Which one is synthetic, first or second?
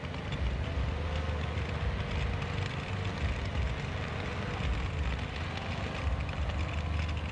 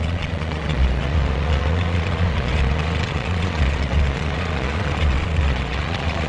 second